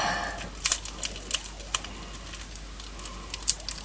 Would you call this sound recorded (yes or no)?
yes